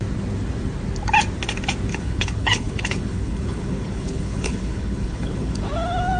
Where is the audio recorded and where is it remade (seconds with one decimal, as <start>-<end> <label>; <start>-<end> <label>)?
0.0-1.9 recorded; 1.9-5.6 remade; 5.6-6.2 recorded